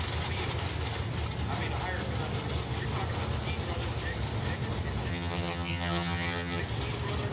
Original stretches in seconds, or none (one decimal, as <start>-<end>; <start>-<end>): 0.0-5.1; 6.6-7.3